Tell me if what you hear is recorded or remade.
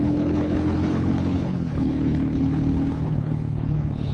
remade